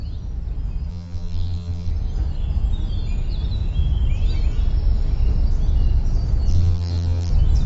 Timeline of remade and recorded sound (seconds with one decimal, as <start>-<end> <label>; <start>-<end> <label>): 0.0-0.9 recorded; 0.9-1.9 remade; 1.9-6.5 recorded; 6.5-7.3 remade; 7.3-7.7 recorded